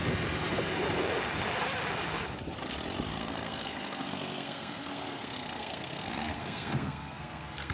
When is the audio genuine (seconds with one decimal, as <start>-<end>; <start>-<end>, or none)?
0.0-3.1